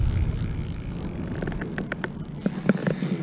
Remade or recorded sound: recorded